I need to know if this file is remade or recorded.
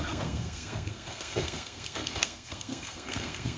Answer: remade